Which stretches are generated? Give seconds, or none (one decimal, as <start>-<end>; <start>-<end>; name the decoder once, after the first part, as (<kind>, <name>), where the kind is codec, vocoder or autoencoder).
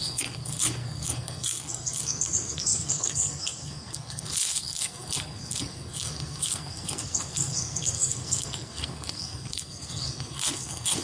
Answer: 0.0-11.0 (codec, SNAC)